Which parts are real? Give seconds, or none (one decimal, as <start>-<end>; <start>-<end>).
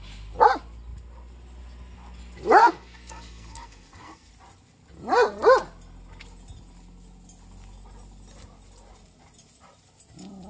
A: 0.0-2.6; 4.3-10.5